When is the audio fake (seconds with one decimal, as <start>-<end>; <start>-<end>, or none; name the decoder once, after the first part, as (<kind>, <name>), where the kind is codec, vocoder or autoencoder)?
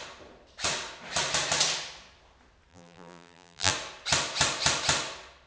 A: 2.7-3.7 (vocoder, BigVGAN v2)